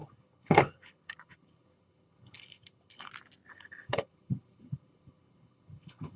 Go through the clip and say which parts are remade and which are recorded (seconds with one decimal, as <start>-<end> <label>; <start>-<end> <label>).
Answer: 0.0-3.1 remade; 3.1-3.5 recorded; 3.5-6.2 remade